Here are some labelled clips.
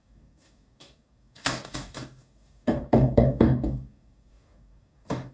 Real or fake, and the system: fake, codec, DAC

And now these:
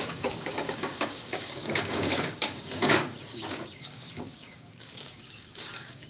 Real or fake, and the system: fake, codec, DAC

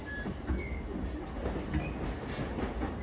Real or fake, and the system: real